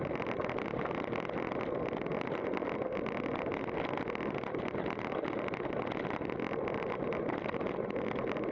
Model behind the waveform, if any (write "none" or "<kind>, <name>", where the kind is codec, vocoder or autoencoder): none